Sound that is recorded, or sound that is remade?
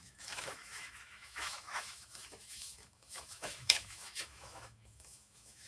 remade